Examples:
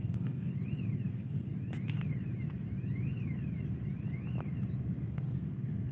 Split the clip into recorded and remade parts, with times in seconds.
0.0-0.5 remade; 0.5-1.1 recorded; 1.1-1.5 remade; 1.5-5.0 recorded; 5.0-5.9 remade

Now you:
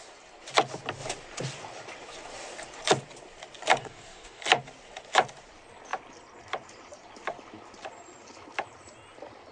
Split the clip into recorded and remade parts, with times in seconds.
0.0-3.8 recorded; 3.8-4.4 remade; 4.4-9.5 recorded

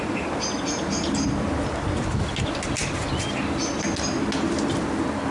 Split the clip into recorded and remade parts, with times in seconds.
0.0-5.3 recorded

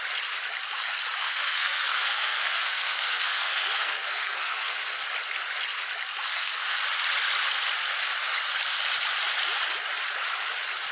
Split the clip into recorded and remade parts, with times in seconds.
0.0-1.2 recorded; 1.2-5.0 remade; 5.0-6.3 recorded; 6.3-6.8 remade; 6.8-10.9 recorded

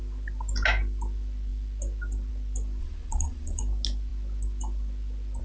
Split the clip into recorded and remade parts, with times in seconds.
0.0-2.8 recorded; 2.8-3.6 remade; 3.6-5.4 recorded

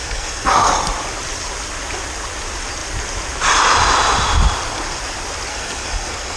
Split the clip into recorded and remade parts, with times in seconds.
0.0-0.7 remade; 0.7-5.5 recorded; 5.5-6.4 remade

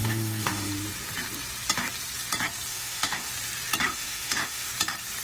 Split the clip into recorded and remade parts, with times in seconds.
0.0-0.7 remade; 0.7-2.7 recorded; 2.7-3.3 remade; 3.3-3.9 recorded; 3.9-4.7 remade; 4.7-5.2 recorded